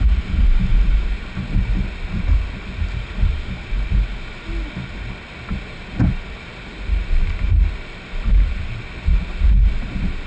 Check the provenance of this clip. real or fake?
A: real